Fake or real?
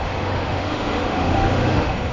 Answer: fake